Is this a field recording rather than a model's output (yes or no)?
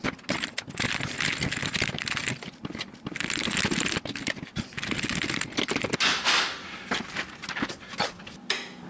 yes